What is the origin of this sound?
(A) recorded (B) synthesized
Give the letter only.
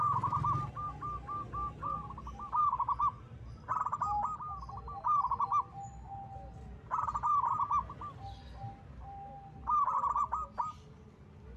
A